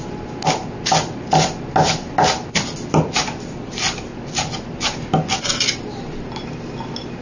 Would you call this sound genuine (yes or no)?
yes